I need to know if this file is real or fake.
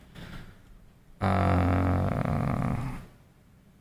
real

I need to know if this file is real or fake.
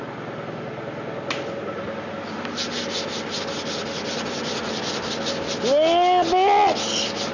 real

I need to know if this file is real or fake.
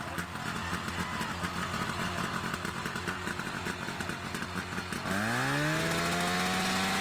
real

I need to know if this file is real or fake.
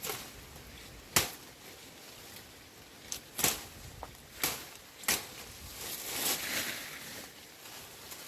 real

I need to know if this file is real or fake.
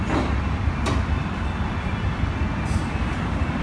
real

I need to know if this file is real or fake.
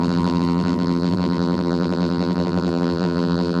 fake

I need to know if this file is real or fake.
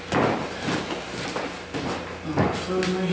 real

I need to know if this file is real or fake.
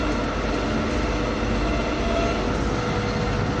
real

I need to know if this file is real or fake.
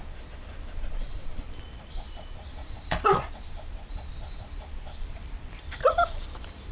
fake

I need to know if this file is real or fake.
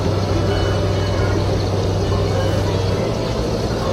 real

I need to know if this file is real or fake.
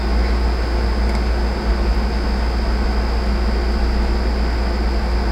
real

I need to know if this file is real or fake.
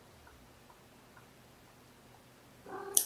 fake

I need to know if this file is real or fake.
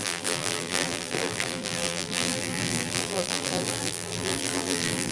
fake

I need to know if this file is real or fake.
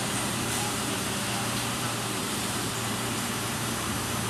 fake